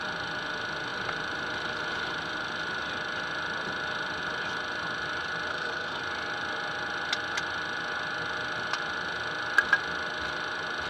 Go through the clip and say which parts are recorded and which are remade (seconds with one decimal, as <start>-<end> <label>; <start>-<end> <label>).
0.0-5.5 recorded; 5.5-6.0 remade; 6.0-10.9 recorded